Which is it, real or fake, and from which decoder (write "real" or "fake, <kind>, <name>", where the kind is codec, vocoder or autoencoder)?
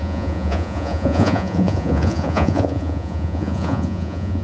fake, vocoder, Vocos